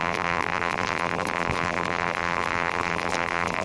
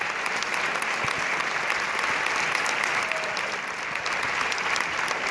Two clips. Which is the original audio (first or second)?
second